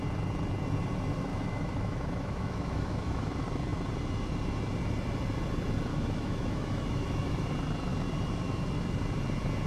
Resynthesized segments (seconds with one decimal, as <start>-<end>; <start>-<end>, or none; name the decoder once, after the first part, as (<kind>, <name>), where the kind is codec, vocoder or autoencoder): 1.3-3.3 (autoencoder, DAC-VAE); 5.9-7.5